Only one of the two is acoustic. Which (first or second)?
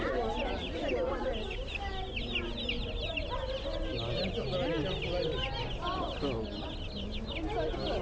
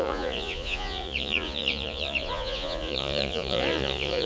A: first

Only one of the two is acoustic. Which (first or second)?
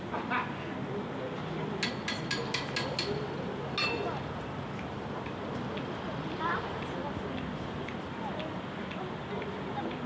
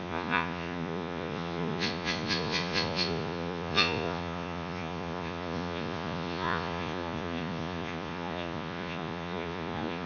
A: first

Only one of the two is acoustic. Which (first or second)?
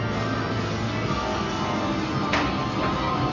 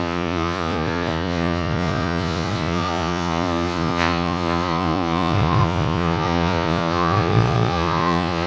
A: first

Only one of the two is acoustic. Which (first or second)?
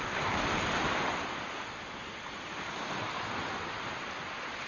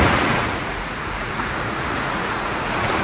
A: first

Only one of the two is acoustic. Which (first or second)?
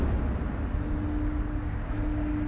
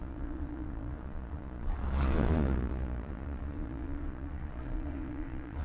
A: first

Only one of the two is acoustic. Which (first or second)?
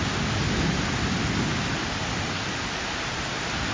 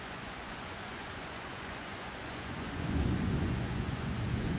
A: first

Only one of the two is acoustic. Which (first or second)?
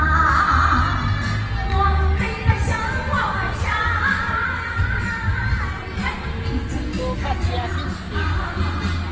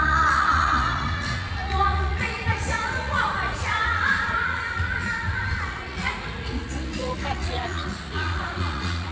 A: first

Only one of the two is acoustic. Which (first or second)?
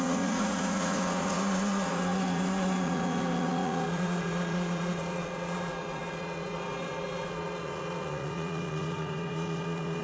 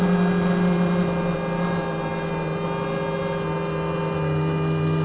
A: second